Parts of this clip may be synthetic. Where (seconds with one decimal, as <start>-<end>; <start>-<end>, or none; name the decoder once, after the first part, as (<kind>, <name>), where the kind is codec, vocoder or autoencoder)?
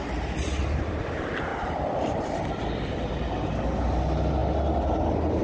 none